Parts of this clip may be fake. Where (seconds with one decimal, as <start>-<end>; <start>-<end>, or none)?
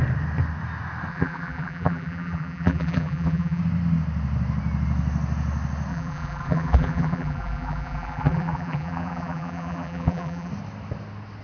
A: 1.1-3.6; 5.9-10.5